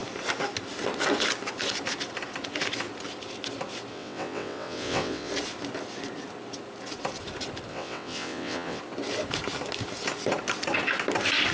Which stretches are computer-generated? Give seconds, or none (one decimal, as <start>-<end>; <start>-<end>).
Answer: 3.9-5.3; 7.7-8.8